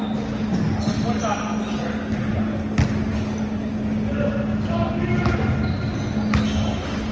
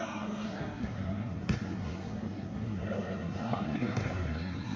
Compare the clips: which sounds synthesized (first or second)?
second